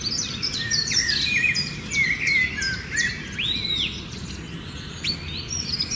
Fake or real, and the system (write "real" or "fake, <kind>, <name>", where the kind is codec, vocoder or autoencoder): real